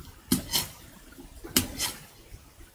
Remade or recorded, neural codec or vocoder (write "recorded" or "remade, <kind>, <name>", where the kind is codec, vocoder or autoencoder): recorded